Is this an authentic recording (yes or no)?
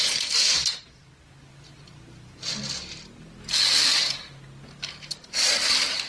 yes